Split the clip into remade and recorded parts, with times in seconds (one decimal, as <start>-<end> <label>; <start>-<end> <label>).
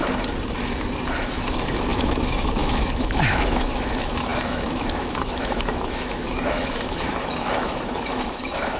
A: 0.0-1.2 recorded; 1.2-8.8 remade